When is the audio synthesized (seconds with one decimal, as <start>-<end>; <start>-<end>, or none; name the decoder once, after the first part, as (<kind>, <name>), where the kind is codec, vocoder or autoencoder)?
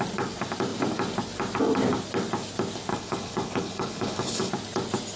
2.9-4.5 (codec, HILCodec)